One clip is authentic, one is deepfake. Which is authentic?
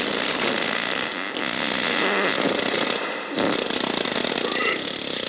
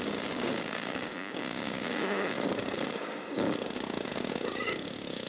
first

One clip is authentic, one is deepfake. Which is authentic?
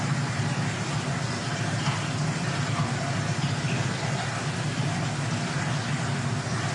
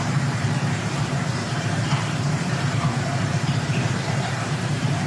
first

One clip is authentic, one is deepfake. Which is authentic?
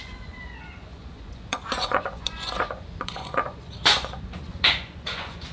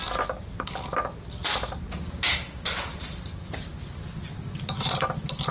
second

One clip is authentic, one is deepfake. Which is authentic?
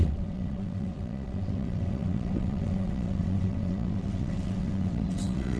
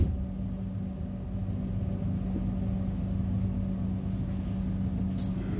second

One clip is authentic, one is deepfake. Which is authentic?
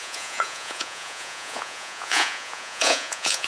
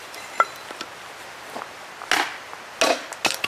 second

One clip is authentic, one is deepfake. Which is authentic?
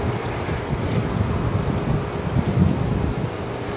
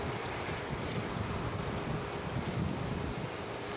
first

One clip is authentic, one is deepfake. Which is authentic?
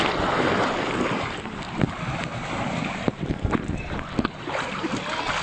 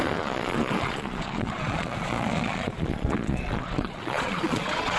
first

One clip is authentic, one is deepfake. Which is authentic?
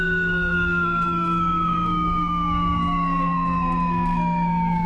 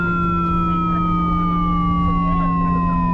second